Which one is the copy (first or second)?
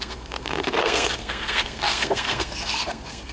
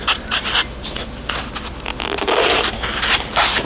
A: first